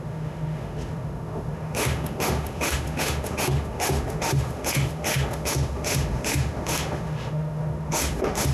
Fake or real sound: fake